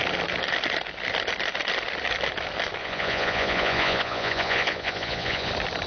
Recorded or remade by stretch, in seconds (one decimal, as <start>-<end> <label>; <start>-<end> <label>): 0.0-2.8 recorded; 2.8-5.5 remade; 5.5-5.9 recorded